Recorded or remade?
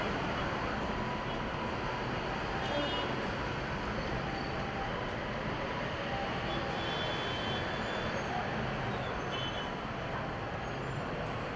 recorded